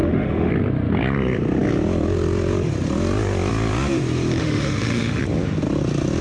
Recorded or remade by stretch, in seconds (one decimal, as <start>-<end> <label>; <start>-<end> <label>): 0.0-0.5 remade; 0.5-4.4 recorded; 4.4-5.2 remade; 5.2-6.2 recorded